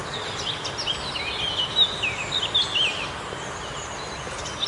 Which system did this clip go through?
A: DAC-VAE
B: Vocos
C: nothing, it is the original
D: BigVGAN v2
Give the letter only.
C